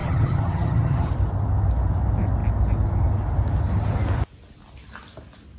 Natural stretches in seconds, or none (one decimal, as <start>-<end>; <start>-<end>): 1.1-5.6